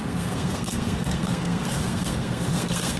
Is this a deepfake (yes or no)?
yes